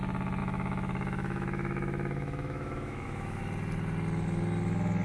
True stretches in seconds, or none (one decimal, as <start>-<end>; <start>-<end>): 0.0-0.4; 3.4-5.0